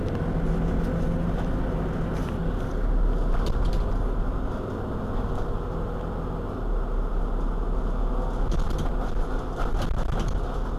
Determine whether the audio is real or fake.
real